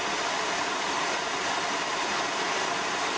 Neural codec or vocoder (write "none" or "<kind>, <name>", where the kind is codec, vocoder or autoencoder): vocoder, BigVGAN v2